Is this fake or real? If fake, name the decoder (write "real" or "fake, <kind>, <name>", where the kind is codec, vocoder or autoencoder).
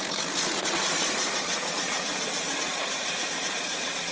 fake, vocoder, Vocos